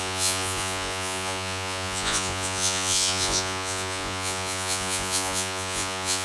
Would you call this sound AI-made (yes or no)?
yes